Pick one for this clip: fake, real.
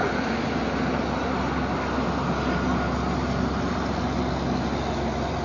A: real